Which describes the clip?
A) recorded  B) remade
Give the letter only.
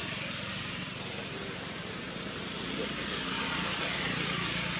A